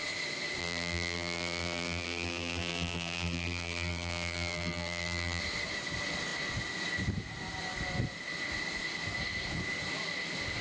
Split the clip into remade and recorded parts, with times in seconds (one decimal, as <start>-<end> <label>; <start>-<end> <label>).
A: 0.0-0.6 recorded; 0.6-5.4 remade; 5.4-10.6 recorded